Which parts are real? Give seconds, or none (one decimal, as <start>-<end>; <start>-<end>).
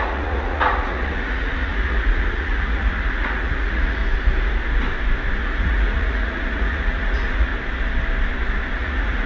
4.0-5.4; 7.5-8.8